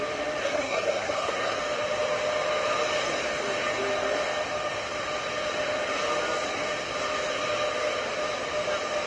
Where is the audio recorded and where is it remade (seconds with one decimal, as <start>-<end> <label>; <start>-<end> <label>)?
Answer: 0.0-0.4 recorded; 0.4-1.6 remade; 1.6-9.1 recorded